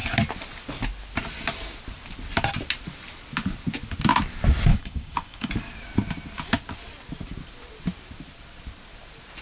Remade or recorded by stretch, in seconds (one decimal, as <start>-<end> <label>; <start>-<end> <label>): 0.0-4.7 recorded; 4.7-5.5 remade; 5.5-9.4 recorded